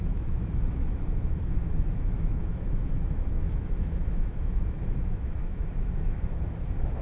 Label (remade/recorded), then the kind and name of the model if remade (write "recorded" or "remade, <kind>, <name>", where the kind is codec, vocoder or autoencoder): remade, autoencoder, DAC-VAE